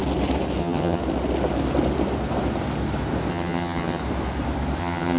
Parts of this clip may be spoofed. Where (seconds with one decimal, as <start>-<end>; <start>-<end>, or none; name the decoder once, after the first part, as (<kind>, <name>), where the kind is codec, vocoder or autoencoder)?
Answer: 0.6-1.0 (vocoder, HiFi-GAN); 3.3-4.0; 4.8-5.2